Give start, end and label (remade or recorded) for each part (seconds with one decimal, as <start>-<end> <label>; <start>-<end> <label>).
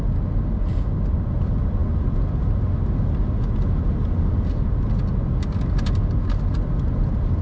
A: 0.0-7.4 recorded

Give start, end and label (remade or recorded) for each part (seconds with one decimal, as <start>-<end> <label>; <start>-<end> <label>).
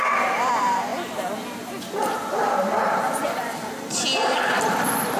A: 0.0-5.2 remade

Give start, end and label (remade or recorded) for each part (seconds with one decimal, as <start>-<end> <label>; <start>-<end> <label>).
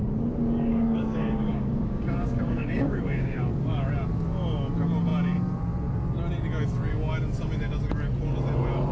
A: 0.0-0.7 recorded; 0.7-3.9 remade; 3.9-8.9 recorded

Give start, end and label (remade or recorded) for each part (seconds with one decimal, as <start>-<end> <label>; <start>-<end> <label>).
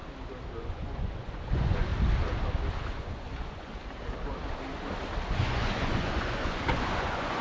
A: 0.0-0.6 recorded; 0.6-1.9 remade; 1.9-2.9 recorded; 2.9-3.7 remade; 3.7-5.3 recorded; 5.3-7.4 remade